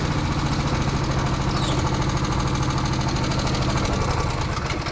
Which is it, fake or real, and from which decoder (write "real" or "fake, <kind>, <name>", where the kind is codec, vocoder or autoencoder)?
real